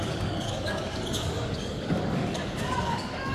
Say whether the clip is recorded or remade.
remade